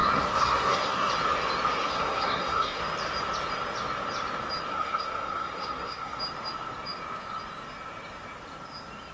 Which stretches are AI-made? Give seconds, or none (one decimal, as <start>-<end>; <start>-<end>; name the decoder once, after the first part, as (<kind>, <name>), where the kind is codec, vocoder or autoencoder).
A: 0.0-1.1 (codec, SNAC); 1.8-2.8; 4.7-6.2